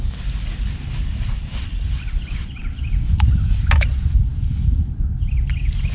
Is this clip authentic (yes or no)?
yes